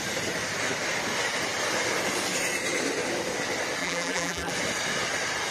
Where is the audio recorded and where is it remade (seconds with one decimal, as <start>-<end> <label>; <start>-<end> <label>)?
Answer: 0.0-3.8 recorded; 3.8-4.5 remade; 4.5-5.5 recorded